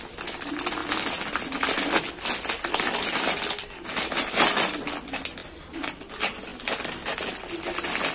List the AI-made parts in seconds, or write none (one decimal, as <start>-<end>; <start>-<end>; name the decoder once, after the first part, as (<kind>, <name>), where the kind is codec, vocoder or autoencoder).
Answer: none